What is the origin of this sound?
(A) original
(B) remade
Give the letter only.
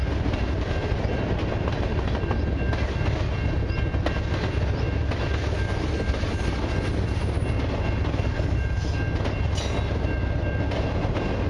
A